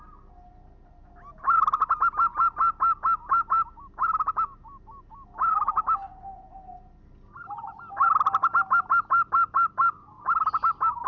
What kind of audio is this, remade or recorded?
recorded